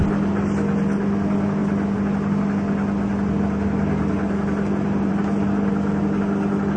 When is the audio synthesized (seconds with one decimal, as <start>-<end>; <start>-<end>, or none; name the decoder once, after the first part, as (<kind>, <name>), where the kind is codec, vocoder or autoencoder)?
none